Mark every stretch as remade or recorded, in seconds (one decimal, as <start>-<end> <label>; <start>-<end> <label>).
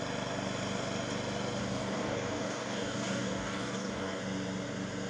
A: 0.0-1.6 recorded; 1.6-4.2 remade; 4.2-5.1 recorded